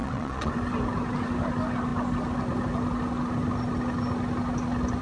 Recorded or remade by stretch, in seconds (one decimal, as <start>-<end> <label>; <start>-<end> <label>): 0.0-0.5 remade; 0.5-5.0 recorded